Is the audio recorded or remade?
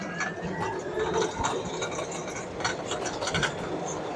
recorded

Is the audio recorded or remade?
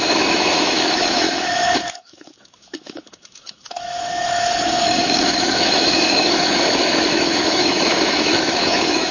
remade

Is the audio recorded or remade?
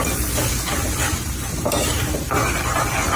recorded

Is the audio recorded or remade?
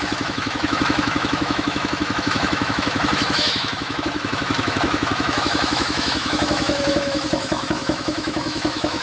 remade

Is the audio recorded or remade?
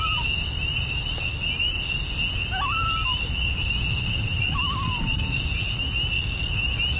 recorded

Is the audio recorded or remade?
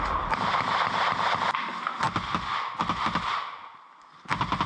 recorded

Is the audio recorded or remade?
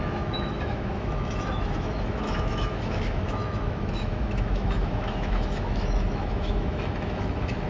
remade